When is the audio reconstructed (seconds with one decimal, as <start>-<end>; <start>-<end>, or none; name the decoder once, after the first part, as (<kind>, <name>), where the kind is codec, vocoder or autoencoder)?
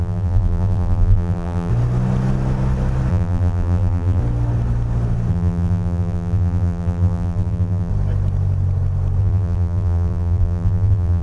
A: 0.0-1.7 (vocoder, BigVGAN v2); 3.1-4.2; 5.3-7.9; 9.2-11.2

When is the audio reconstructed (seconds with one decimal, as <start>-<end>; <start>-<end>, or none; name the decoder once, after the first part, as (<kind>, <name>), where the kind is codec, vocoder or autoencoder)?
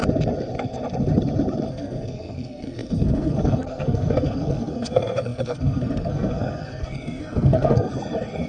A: 1.7-7.9 (codec, SNAC)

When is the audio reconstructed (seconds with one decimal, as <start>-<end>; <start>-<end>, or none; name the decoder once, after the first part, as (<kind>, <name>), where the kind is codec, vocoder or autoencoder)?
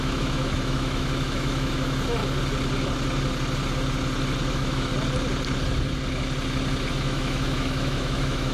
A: 0.0-2.2 (autoencoder, DAC-VAE); 4.5-4.9; 6.9-8.5